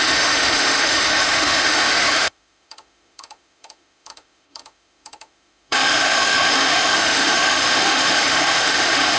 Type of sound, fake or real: fake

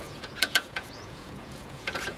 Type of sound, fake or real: fake